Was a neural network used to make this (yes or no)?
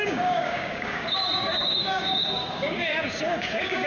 yes